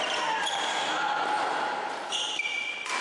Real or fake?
real